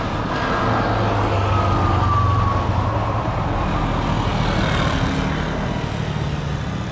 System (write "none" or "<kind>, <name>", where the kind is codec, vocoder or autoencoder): none